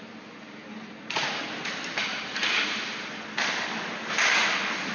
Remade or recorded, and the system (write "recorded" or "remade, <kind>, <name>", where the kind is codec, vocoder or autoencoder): recorded